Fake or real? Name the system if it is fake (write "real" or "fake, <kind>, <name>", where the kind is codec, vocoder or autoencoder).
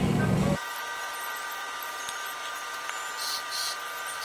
real